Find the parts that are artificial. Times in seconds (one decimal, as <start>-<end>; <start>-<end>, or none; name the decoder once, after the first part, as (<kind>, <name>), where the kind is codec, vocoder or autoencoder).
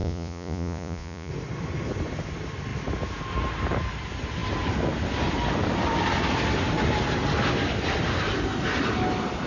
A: 0.0-1.3 (vocoder, Vocos)